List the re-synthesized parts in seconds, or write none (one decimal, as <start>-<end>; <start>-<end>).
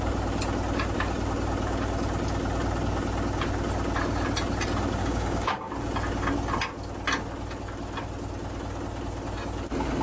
5.0-5.7